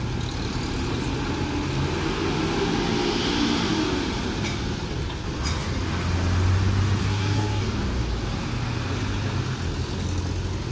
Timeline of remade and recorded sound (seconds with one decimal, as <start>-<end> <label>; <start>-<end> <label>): 0.0-7.0 recorded; 7.0-7.6 remade; 7.6-10.7 recorded